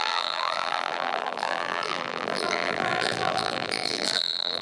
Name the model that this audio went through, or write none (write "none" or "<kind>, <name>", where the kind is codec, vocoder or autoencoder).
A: vocoder, BigVGAN v2